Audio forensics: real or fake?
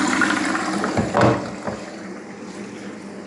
real